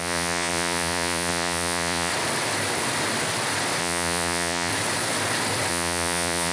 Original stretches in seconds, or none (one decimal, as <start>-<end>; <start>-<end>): 2.1-3.8; 4.7-5.7